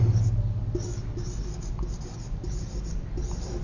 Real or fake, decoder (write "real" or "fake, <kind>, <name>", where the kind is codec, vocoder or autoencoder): real